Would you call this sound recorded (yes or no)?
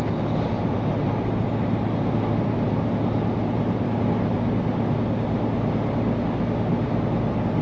yes